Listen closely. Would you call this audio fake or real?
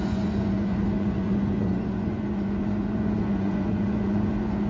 fake